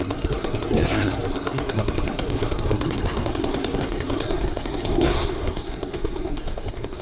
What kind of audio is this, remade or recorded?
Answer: remade